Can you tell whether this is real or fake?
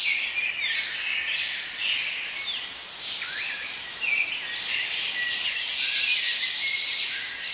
real